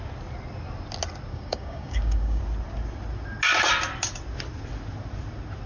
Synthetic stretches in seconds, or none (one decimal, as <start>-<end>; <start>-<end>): 1.3-2.4